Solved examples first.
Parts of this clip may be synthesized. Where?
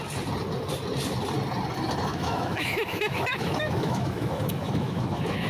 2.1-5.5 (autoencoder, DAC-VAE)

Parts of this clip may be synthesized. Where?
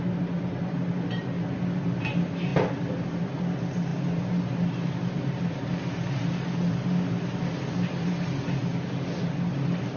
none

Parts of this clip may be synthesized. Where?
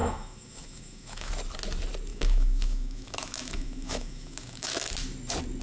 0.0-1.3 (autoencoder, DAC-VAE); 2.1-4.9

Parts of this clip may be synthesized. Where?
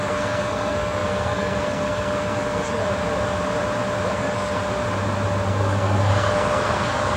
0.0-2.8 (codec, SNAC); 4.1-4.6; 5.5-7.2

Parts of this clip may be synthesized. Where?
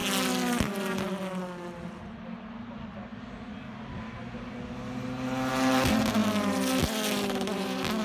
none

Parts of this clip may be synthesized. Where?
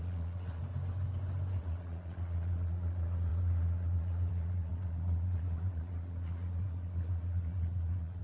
0.0-0.6 (vocoder, Vocos); 1.6-8.2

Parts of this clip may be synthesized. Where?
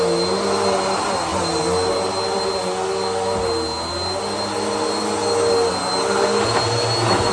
none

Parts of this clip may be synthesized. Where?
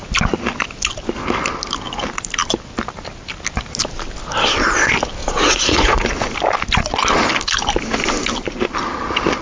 5.2-6.1 (vocoder, Vocos)